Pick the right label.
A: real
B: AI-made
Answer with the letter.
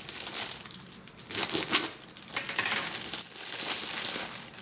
A